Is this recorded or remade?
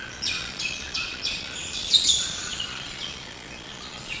remade